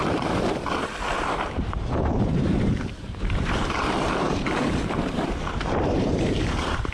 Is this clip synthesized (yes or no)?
yes